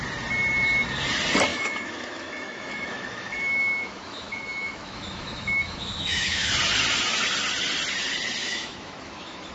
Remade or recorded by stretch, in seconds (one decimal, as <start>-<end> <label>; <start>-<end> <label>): 0.0-1.5 recorded; 1.5-6.5 remade; 6.5-8.4 recorded; 8.4-9.5 remade